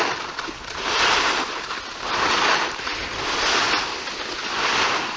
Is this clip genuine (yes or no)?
yes